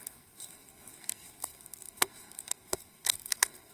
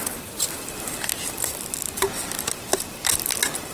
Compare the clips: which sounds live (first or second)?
second